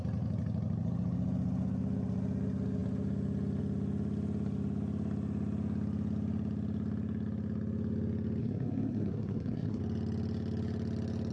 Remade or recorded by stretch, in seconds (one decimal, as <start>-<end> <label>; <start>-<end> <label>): 0.0-8.4 recorded; 8.4-9.8 remade; 9.8-11.3 recorded